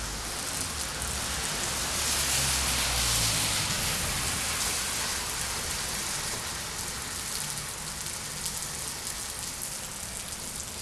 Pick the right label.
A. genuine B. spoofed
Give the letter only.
A